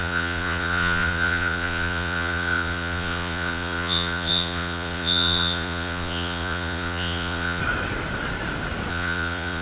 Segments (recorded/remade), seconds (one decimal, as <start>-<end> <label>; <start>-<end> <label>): 0.0-7.6 remade; 7.6-8.9 recorded; 8.9-9.6 remade